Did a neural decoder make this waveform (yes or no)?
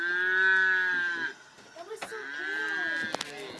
no